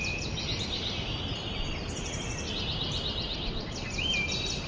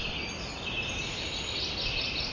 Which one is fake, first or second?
second